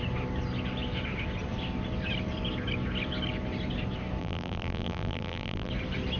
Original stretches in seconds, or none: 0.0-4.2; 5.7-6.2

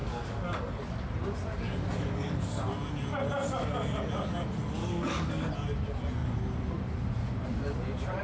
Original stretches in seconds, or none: 0.8-1.9; 2.5-4.8; 5.5-8.2

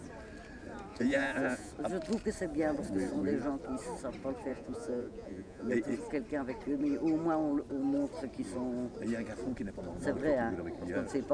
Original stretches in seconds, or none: 0.0-0.9; 1.7-4.5; 5.7-11.3

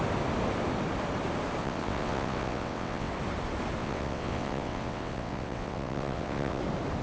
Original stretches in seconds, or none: 0.0-1.6; 3.1-3.8; 6.6-7.0

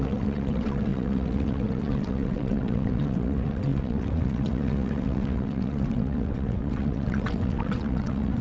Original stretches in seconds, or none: none

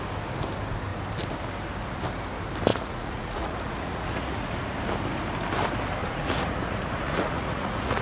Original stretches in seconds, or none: 0.0-2.7; 4.8-6.0

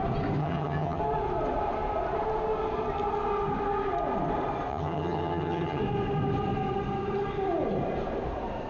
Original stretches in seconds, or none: 0.0-0.4; 1.0-4.7; 5.8-8.7

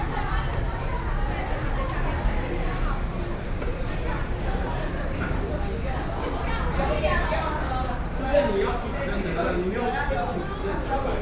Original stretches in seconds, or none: 0.0-4.2; 5.4-11.2